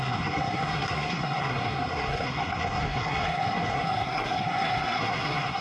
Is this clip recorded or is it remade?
remade